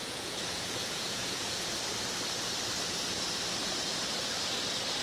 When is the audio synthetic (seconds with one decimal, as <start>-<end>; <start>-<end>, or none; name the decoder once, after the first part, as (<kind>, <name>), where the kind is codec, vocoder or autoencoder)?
0.0-1.7 (vocoder, Vocos)